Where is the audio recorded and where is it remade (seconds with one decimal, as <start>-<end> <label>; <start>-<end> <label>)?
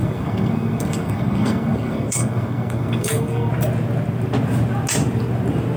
0.0-3.5 remade; 3.5-5.8 recorded